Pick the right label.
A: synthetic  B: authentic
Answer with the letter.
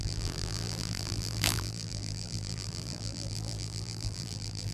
A